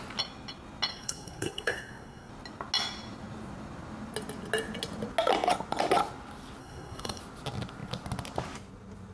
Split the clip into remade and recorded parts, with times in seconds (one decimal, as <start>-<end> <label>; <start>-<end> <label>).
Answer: 0.0-0.9 recorded; 0.9-2.3 remade; 2.3-6.6 recorded; 6.6-7.2 remade; 7.2-9.1 recorded